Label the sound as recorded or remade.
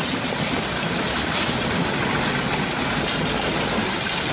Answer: recorded